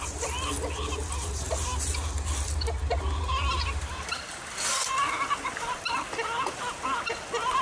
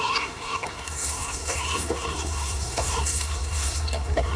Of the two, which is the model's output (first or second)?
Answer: second